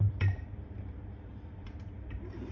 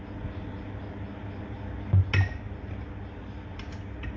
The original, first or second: second